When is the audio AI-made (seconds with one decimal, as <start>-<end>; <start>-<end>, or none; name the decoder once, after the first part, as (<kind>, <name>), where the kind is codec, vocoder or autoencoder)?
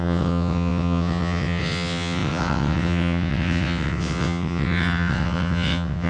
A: 0.0-6.1 (vocoder, WaveNeXt)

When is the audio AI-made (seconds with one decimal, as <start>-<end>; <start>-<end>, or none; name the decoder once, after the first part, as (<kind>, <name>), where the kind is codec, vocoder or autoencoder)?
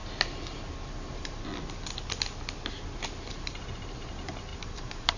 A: 0.9-1.5 (vocoder, BigVGAN v2); 3.3-5.2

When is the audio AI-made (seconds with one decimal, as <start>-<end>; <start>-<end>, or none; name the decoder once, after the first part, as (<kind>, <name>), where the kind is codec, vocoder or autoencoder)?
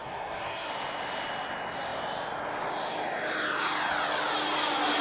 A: 0.0-0.7 (codec, SNAC)